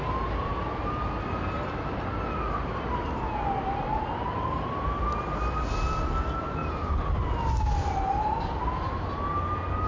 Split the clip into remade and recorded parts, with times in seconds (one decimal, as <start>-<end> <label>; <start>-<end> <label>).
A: 0.0-9.9 recorded